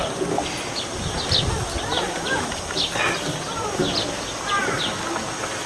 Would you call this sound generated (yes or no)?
no